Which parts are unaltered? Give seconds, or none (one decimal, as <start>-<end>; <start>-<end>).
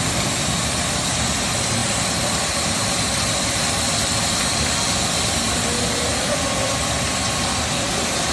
0.0-1.8; 4.7-6.1; 6.8-8.3